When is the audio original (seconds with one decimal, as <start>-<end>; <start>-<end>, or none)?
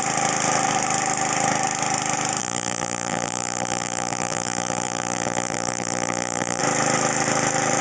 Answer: 0.0-2.4; 6.6-7.8